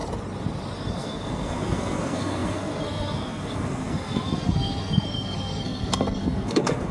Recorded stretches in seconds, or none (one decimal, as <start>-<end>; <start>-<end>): 0.0-0.9